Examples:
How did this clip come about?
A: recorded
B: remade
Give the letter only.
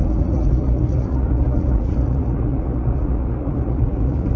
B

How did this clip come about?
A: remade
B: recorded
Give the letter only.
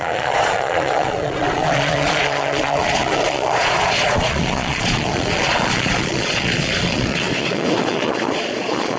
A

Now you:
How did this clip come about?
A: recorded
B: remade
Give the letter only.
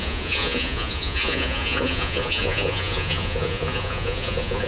B